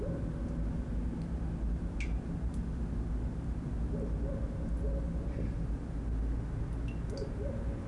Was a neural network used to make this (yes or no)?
no